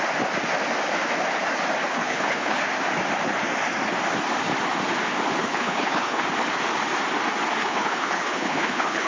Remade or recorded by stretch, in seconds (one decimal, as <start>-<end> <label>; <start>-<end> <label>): 0.0-1.9 recorded; 1.9-2.6 remade; 2.6-5.4 recorded; 5.4-6.2 remade; 6.2-7.6 recorded; 7.6-9.1 remade

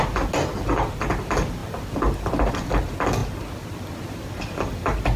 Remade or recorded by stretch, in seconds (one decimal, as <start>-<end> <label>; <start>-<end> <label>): 0.0-5.2 recorded

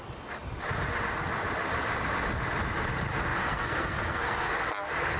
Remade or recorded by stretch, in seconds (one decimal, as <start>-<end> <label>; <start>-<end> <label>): 0.0-3.3 recorded; 3.3-4.5 remade; 4.5-5.2 recorded

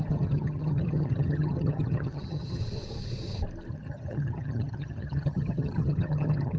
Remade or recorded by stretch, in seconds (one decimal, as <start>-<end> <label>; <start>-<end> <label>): 0.0-2.6 remade; 2.6-3.7 recorded; 3.7-6.6 remade